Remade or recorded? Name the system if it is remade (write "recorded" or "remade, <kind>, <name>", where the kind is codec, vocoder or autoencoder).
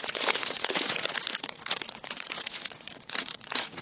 remade, vocoder, Vocos